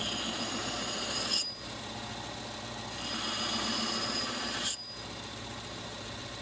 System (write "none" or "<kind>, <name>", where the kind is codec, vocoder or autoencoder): none